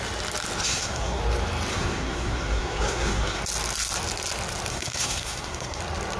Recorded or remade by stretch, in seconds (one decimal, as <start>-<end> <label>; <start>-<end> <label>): 0.0-0.6 recorded; 0.6-1.2 remade; 1.2-1.7 recorded; 1.7-3.4 remade; 3.4-4.7 recorded; 4.7-5.8 remade; 5.8-6.2 recorded